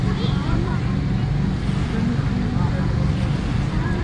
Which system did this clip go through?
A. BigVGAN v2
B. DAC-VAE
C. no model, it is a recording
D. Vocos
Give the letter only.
C